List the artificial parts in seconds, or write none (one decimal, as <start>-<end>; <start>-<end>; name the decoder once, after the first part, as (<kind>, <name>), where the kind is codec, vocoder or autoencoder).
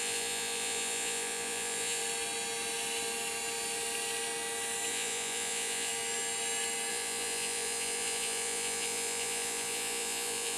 0.0-2.0 (vocoder, Vocos); 4.9-5.9; 6.9-10.6